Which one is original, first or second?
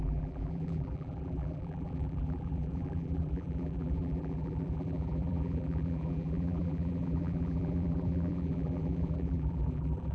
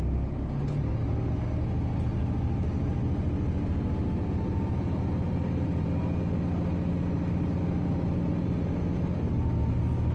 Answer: second